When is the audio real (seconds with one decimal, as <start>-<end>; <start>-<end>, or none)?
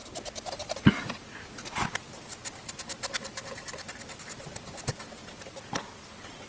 0.0-6.5